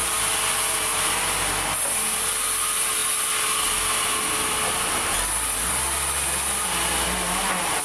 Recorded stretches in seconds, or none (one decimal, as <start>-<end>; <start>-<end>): 0.0-7.8